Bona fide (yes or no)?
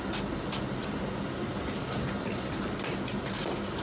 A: yes